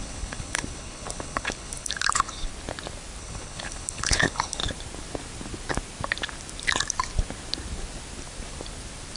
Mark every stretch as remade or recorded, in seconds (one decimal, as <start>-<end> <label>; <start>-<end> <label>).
0.0-2.5 remade; 2.5-3.2 recorded; 3.2-4.6 remade; 4.6-9.2 recorded